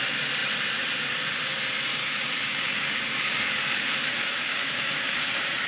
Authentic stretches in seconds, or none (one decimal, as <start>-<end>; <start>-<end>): 0.0-1.9; 5.3-5.7